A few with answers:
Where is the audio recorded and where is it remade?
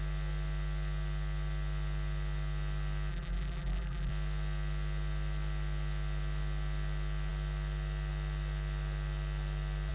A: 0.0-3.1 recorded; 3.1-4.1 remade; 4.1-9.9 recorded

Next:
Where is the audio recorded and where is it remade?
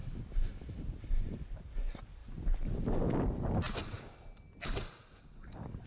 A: 0.0-3.8 recorded; 3.8-4.8 remade; 4.8-5.9 recorded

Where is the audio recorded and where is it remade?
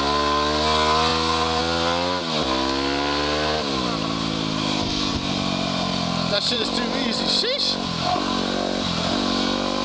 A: 0.0-5.1 recorded; 5.1-7.4 remade; 7.4-9.8 recorded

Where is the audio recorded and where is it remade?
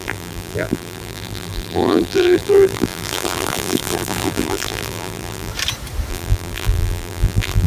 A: 0.0-5.5 remade; 5.5-6.1 recorded; 6.1-7.7 remade